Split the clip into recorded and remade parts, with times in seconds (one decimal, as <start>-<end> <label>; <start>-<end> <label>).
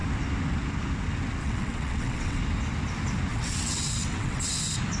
0.0-1.4 recorded; 1.4-2.4 remade; 2.4-3.3 recorded; 3.3-4.5 remade; 4.5-5.0 recorded